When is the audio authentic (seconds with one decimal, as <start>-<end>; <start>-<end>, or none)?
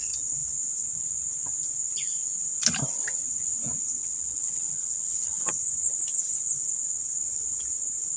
0.0-4.0; 5.5-8.2